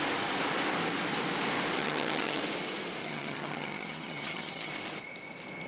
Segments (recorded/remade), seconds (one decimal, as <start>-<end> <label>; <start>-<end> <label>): 0.0-1.8 recorded; 1.8-2.4 remade; 2.4-3.0 recorded; 3.0-4.7 remade; 4.7-5.7 recorded